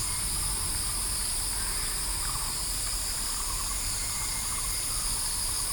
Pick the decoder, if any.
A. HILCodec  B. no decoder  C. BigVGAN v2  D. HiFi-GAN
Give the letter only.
B